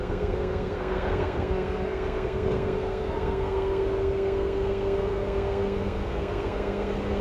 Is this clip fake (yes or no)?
yes